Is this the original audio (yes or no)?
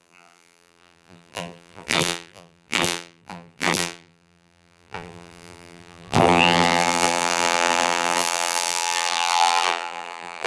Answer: no